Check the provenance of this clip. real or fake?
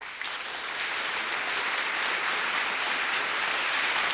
real